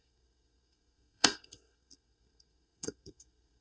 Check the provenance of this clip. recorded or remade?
remade